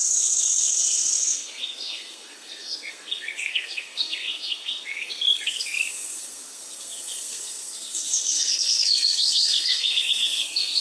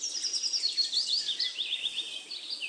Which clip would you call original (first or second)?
second